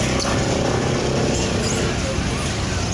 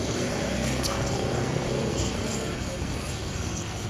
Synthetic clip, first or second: second